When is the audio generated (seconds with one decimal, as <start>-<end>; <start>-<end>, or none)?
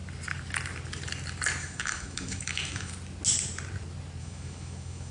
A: 1.6-2.9; 4.2-5.1